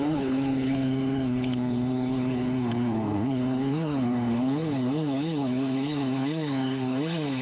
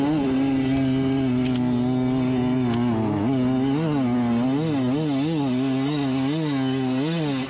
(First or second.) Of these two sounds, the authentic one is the second